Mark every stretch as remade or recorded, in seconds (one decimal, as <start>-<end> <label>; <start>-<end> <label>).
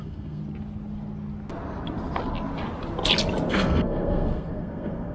0.0-0.4 remade; 0.4-3.5 recorded; 3.5-5.1 remade